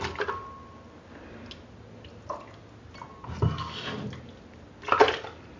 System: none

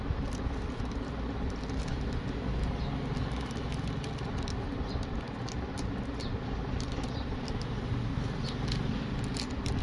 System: none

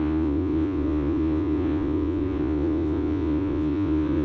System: vocoder, Vocos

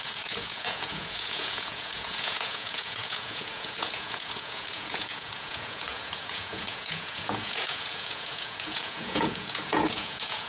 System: vocoder, Vocos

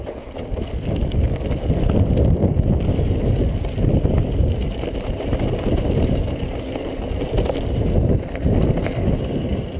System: none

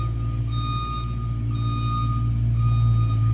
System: none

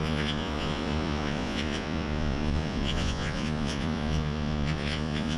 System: vocoder, Vocos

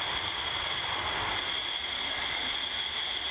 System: none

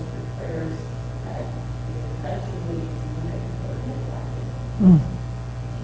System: none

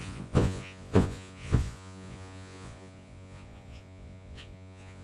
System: vocoder, Vocos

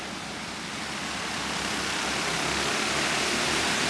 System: none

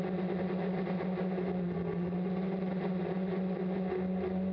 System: none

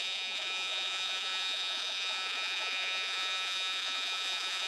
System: vocoder, Vocos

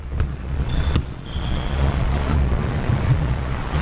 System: vocoder, Vocos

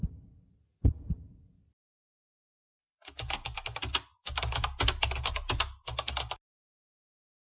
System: none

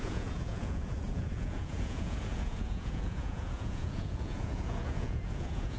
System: vocoder, Vocos